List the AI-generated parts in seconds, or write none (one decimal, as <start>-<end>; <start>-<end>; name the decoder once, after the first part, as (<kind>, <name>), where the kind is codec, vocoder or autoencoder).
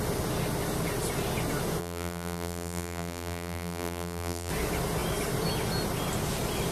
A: 1.8-4.5 (vocoder, BigVGAN v2)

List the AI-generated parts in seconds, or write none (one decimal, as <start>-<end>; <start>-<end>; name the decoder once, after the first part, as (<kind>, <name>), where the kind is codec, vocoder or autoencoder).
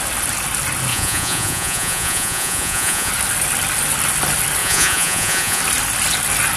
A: 0.9-3.1 (vocoder, Vocos); 4.6-5.6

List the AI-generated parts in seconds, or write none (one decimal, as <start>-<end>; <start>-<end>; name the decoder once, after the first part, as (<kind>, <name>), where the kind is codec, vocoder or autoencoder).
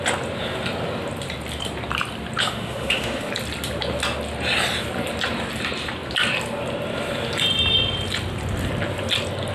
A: 2.4-3.3 (autoencoder, DAC-VAE)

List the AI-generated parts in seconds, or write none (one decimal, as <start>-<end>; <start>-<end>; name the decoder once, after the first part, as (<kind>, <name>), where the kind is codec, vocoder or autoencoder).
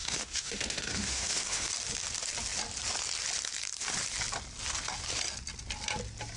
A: 0.0-1.7 (autoencoder, DAC-VAE)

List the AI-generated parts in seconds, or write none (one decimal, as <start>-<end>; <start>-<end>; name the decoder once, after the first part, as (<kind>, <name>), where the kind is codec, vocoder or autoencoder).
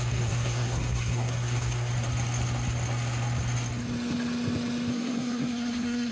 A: 0.0-1.9 (codec, SNAC); 4.9-6.1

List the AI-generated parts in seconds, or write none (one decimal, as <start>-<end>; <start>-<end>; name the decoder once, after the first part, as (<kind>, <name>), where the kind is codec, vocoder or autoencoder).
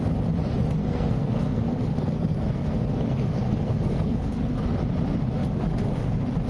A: 0.8-4.5 (codec, SNAC)